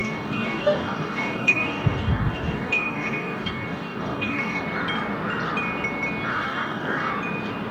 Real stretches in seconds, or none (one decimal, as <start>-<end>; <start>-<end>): 4.6-6.3; 7.1-7.7